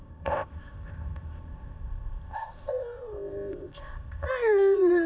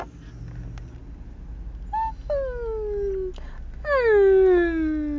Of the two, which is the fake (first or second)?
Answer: first